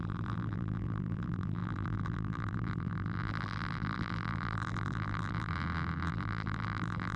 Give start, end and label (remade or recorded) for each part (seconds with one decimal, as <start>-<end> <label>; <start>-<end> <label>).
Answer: 0.0-5.5 remade; 5.5-6.1 recorded; 6.1-7.2 remade